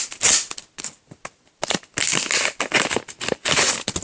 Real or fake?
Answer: real